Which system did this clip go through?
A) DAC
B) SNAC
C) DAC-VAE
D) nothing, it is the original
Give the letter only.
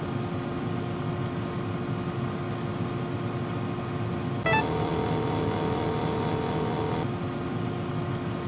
D